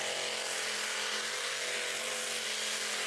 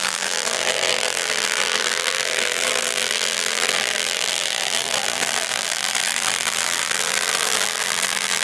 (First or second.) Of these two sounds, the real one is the first